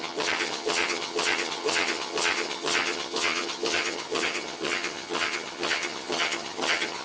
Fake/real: fake